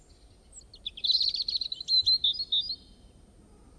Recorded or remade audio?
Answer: recorded